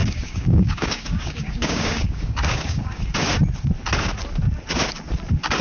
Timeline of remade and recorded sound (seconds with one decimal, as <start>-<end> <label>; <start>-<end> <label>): 0.0-3.0 remade; 3.0-5.6 recorded